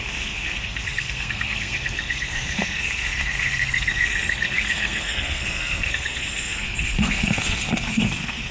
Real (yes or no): no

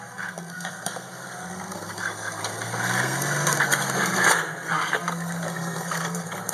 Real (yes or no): no